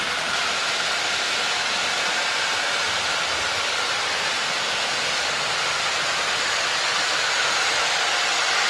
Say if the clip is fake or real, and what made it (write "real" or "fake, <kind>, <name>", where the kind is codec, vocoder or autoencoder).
real